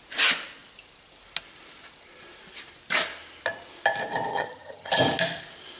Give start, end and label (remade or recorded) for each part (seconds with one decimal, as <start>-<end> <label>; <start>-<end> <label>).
0.0-4.3 recorded; 4.3-4.9 remade; 4.9-5.8 recorded

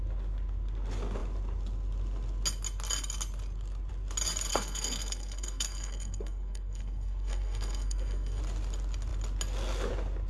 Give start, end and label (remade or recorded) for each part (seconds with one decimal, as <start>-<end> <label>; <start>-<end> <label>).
0.0-4.5 recorded; 4.5-8.4 remade; 8.4-10.3 recorded

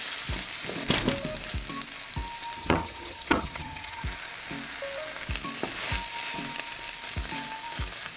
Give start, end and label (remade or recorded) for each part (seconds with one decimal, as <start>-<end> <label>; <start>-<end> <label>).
0.0-2.6 recorded; 2.6-4.0 remade; 4.0-8.2 recorded

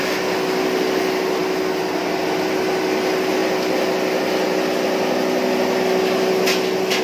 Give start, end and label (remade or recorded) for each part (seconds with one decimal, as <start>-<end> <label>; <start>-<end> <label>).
0.0-7.0 recorded